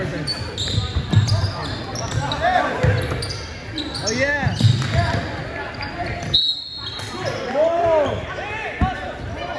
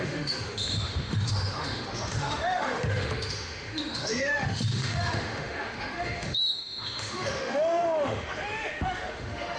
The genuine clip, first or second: first